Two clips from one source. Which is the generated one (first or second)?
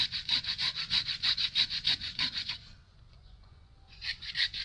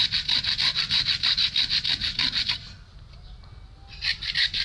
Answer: first